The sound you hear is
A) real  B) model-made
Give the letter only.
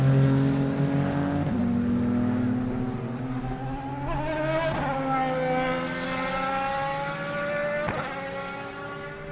A